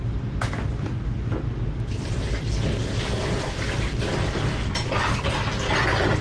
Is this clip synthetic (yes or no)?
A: no